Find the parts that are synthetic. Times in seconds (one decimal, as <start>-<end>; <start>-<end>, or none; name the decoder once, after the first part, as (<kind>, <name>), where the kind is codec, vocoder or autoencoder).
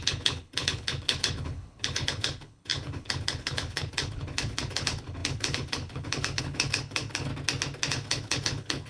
0.0-7.3 (codec, HILCodec); 7.9-8.9